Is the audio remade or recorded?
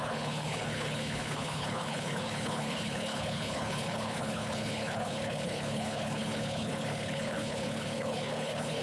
remade